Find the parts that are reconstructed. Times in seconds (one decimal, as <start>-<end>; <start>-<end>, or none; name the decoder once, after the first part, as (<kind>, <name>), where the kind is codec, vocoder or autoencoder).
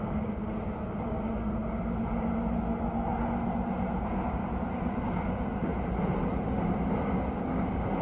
0.0-1.6 (codec, DAC); 4.0-4.4; 5.0-5.7; 7.0-8.0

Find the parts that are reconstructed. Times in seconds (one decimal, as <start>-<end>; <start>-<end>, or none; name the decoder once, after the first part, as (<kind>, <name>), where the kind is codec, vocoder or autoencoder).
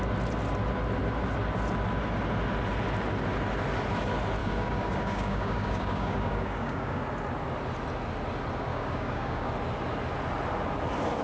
4.4-7.0 (codec, DAC); 8.7-9.5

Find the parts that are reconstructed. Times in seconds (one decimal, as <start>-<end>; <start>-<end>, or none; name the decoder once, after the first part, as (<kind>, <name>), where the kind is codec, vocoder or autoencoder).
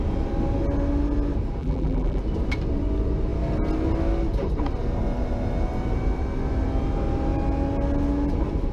1.6-2.2 (vocoder, BigVGAN v2)